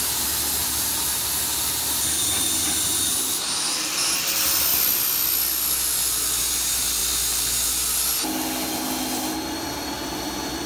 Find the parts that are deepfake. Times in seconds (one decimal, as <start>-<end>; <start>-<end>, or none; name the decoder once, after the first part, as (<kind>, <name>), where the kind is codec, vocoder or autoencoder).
none